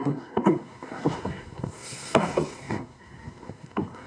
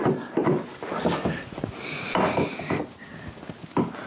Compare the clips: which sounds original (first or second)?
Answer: second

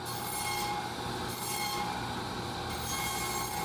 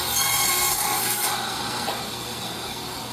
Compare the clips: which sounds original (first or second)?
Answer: first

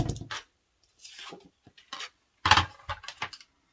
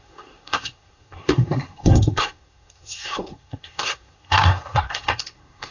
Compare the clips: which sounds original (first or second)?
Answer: first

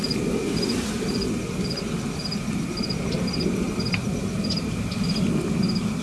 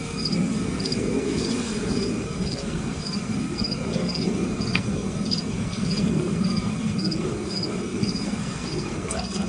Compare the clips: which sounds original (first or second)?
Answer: first